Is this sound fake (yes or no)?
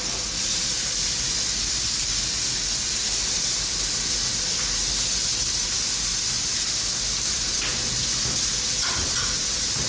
no